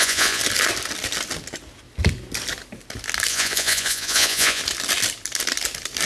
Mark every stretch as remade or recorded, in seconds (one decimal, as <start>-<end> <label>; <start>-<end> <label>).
0.0-0.4 remade; 0.4-3.3 recorded; 3.3-4.6 remade; 4.6-6.1 recorded